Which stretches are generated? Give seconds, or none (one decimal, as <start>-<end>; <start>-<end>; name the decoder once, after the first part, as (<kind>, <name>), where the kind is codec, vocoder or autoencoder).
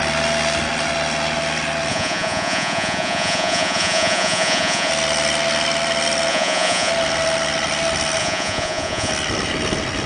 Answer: 1.9-4.9 (vocoder, Vocos); 6.3-6.9; 8.2-9.1